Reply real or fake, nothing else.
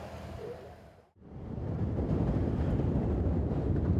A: real